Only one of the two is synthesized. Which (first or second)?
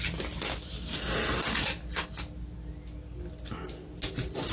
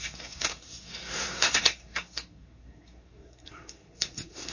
second